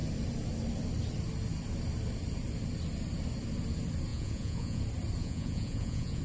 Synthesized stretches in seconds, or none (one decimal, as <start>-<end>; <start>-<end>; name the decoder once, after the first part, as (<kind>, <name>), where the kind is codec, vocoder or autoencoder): 4.1-4.8 (vocoder, Vocos); 5.2-6.2